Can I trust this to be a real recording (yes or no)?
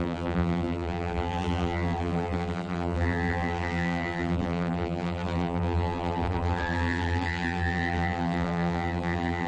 no